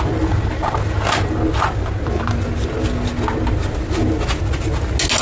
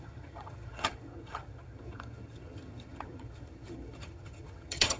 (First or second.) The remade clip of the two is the second